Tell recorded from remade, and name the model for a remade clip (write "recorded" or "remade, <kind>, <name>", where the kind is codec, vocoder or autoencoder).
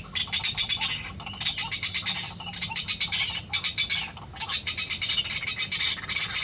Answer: recorded